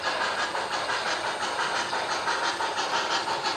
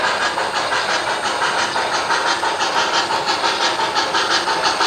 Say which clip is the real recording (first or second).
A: second